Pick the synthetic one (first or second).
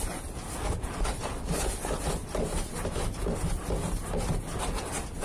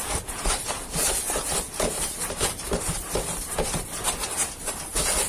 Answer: second